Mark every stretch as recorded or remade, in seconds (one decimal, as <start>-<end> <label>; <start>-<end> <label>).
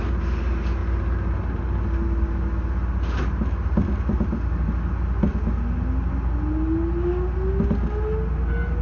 0.0-8.8 recorded